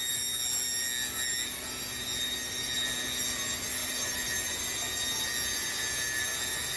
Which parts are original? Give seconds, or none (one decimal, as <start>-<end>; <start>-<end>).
0.0-3.8; 4.6-6.8